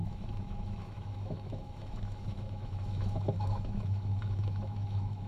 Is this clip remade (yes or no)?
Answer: yes